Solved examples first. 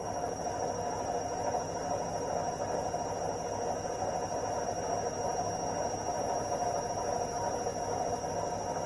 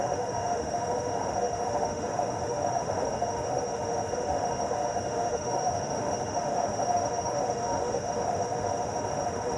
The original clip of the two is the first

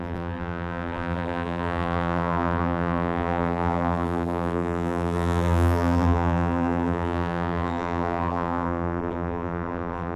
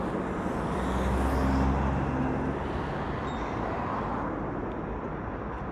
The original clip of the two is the second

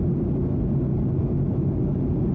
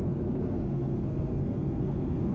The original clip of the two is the first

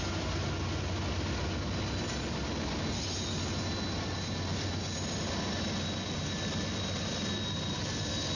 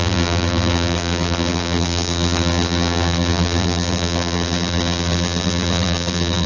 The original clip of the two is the first